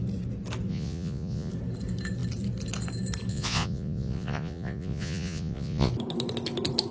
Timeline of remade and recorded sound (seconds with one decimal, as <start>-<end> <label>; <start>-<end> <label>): 0.0-0.7 recorded; 0.7-1.5 remade; 1.5-3.3 recorded; 3.3-5.9 remade; 5.9-6.9 recorded